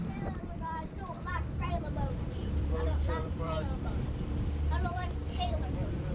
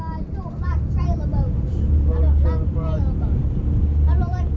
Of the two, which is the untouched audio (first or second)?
second